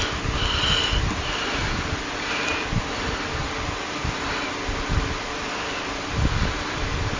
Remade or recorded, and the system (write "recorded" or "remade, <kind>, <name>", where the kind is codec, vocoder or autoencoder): recorded